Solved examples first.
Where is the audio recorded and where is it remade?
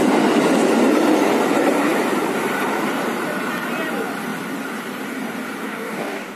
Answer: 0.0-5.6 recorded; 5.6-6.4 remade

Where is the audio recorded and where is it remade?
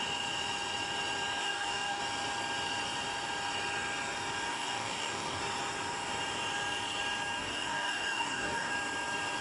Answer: 0.0-1.4 recorded; 1.4-2.0 remade; 2.0-4.5 recorded; 4.5-5.4 remade; 5.4-7.4 recorded; 7.4-8.7 remade; 8.7-9.4 recorded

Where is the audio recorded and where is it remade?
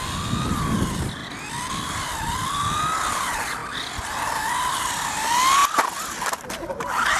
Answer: 0.0-7.2 recorded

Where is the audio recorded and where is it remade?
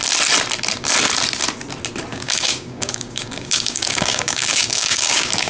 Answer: 0.0-2.1 recorded; 2.1-5.5 remade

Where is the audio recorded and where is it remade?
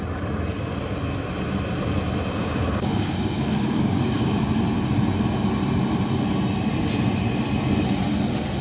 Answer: 0.0-2.4 recorded; 2.4-4.4 remade; 4.4-8.6 recorded